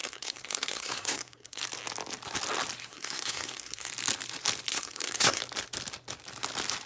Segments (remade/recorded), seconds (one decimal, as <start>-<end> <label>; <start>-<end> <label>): 0.0-1.6 remade; 1.6-2.8 recorded; 2.8-3.9 remade; 3.9-4.7 recorded; 4.7-5.4 remade; 5.4-6.9 recorded